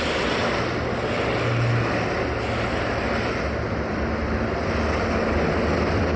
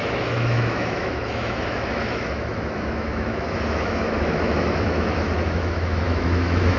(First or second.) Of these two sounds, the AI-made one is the second